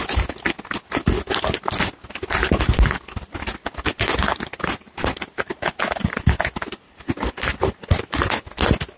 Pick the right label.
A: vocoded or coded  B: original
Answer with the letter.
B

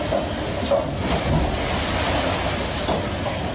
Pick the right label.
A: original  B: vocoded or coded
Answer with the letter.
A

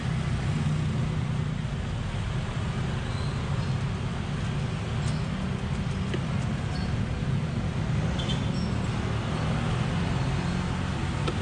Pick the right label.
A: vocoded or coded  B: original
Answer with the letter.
B